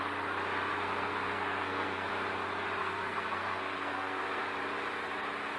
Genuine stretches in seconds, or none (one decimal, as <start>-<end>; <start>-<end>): 0.0-0.7; 2.1-2.8; 4.4-5.6

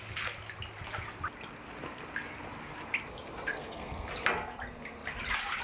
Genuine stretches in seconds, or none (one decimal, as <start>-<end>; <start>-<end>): 0.0-3.5; 4.1-5.6

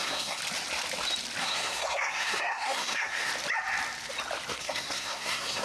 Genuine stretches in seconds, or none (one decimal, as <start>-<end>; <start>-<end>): 0.4-1.4; 3.3-4.6

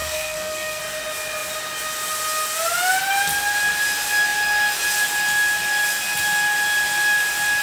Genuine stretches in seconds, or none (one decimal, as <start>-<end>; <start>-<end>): 0.8-7.6

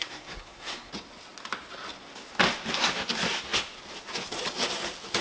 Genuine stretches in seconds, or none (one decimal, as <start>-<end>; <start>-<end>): 0.9-5.2

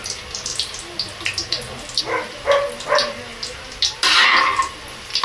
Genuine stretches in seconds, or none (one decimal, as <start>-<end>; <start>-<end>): 0.0-5.2

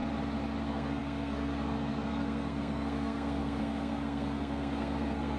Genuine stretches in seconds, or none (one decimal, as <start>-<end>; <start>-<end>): 0.0-0.6

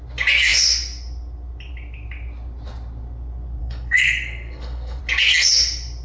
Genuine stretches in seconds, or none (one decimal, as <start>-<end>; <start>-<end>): 0.0-3.6; 5.0-6.0